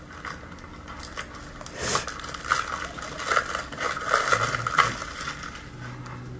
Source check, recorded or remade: recorded